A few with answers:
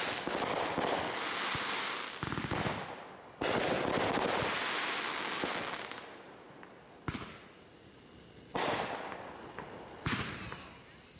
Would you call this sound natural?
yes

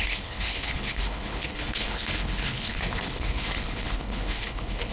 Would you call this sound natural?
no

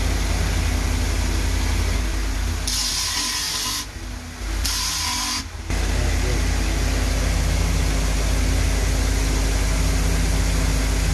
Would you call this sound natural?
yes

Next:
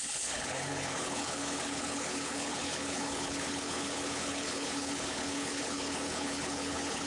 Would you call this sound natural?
no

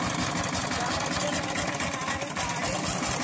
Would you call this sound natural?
yes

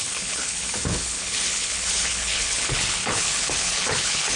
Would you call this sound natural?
no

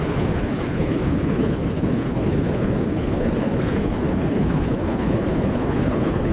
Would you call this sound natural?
no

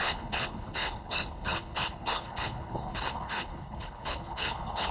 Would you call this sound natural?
no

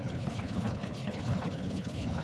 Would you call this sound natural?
no